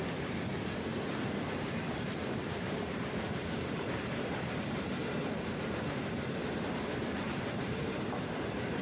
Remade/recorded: remade